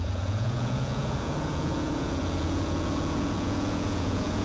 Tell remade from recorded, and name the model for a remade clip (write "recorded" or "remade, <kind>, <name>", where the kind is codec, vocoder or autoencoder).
remade, vocoder, Vocos